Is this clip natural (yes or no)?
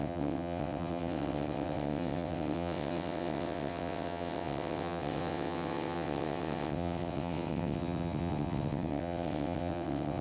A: no